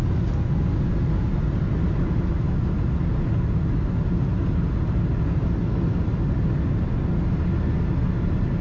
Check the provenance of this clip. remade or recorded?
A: recorded